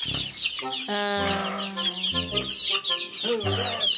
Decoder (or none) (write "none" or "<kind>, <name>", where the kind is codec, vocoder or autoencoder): none